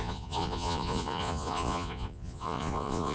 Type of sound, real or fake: fake